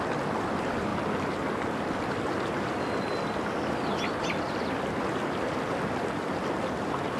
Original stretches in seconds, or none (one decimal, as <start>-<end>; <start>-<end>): 0.0-7.2